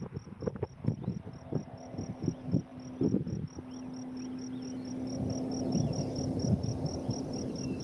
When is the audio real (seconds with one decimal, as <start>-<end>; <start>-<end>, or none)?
0.0-7.8